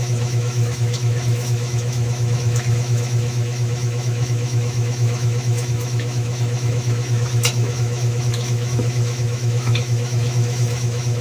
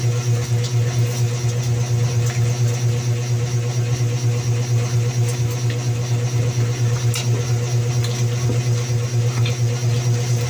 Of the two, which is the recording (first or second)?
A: second